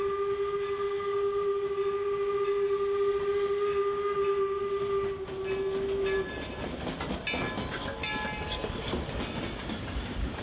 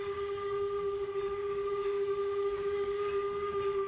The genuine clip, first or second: first